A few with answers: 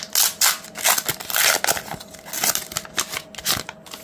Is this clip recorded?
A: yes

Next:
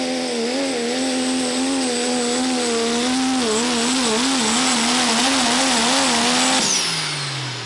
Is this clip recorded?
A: yes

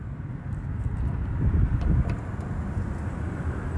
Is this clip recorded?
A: yes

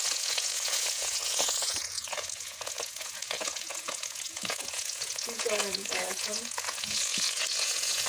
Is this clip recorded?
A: no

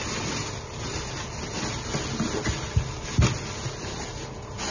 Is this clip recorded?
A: yes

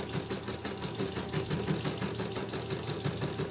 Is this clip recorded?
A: yes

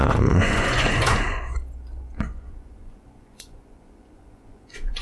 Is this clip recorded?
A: no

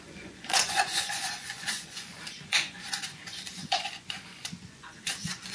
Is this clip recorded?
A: no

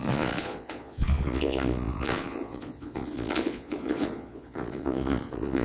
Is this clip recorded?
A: no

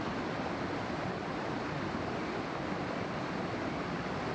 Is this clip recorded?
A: yes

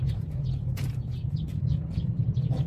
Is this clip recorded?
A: no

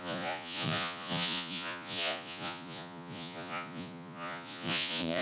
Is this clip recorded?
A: no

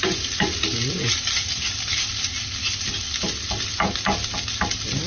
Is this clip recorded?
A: yes